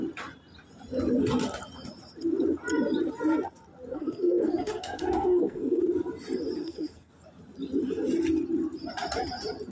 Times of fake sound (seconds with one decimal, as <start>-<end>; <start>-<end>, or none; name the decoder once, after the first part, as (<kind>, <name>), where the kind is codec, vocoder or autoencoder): 3.9-5.8 (codec, SNAC); 6.6-7.1